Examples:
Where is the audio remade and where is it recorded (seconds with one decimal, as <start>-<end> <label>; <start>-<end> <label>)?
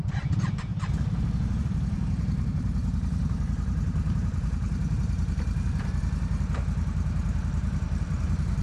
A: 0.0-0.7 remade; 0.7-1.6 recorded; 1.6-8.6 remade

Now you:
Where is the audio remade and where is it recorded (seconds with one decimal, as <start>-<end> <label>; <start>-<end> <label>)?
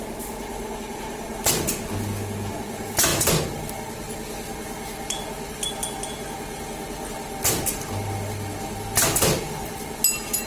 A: 0.0-10.5 recorded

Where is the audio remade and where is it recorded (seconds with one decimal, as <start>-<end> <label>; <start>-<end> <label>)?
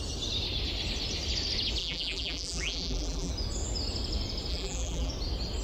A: 0.0-1.8 recorded; 1.8-3.3 remade; 3.3-4.5 recorded; 4.5-5.1 remade; 5.1-5.6 recorded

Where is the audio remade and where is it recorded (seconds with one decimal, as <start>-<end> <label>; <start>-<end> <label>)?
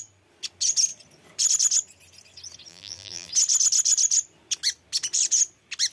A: 0.0-2.7 recorded; 2.7-3.3 remade; 3.3-5.9 recorded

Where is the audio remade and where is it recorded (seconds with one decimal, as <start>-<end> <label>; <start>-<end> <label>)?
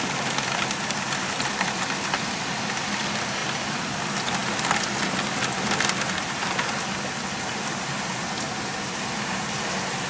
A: 0.0-3.4 recorded; 3.4-4.0 remade; 4.0-10.1 recorded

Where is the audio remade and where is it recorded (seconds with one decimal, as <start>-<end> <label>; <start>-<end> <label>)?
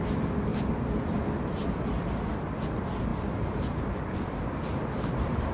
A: 0.0-3.1 recorded; 3.1-4.4 remade; 4.4-5.5 recorded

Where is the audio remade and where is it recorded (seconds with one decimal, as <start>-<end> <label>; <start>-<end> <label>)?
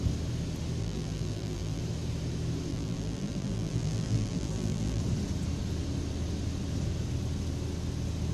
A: 0.0-0.8 recorded; 0.8-1.8 remade; 1.8-2.7 recorded; 2.7-5.0 remade; 5.0-8.3 recorded